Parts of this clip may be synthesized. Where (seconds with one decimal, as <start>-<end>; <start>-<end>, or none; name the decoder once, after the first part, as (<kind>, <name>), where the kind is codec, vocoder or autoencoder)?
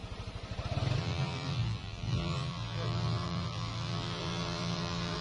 1.0-5.2 (vocoder, BigVGAN v2)